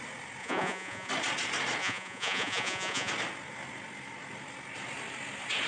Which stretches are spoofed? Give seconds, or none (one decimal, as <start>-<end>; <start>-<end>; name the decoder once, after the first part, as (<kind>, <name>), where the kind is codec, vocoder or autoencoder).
0.4-1.1 (vocoder, Vocos); 1.8-3.1